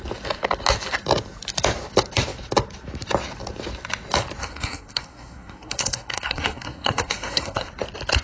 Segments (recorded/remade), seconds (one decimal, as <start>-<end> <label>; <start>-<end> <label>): 0.0-4.4 recorded; 4.4-7.7 remade; 7.7-8.2 recorded